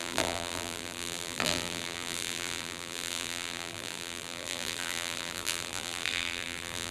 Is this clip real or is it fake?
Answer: fake